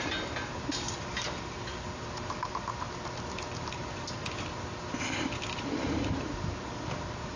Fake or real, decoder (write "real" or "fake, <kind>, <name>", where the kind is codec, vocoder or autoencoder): fake, vocoder, BigVGAN v2